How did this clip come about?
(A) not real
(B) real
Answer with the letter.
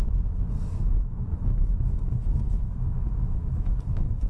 A